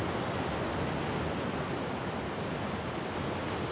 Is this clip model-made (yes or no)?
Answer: no